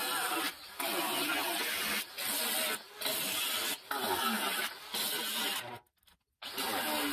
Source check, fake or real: real